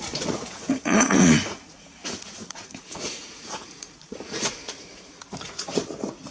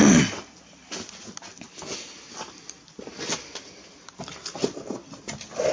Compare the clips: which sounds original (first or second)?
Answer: second